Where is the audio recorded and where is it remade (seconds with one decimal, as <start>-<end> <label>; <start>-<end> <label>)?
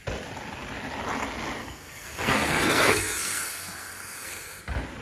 0.0-1.6 recorded; 1.6-4.6 remade; 4.6-5.0 recorded